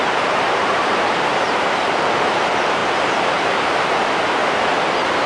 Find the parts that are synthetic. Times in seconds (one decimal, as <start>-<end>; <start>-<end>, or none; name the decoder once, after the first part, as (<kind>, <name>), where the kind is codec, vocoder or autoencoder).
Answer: 0.0-4.4 (vocoder, BigVGAN v2)